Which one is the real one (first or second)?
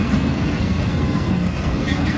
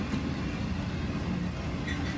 second